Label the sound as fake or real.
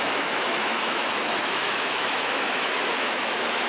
fake